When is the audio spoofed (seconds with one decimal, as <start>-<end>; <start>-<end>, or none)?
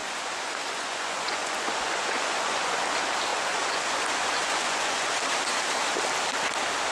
0.0-2.8; 3.3-5.1